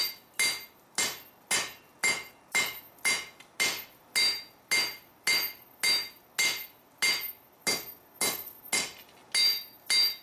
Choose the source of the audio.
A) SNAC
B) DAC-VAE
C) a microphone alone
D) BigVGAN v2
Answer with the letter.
C